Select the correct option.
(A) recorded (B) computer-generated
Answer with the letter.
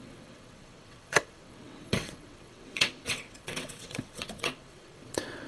B